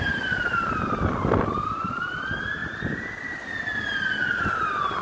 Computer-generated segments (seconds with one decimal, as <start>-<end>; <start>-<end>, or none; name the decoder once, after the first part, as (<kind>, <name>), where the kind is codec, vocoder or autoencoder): none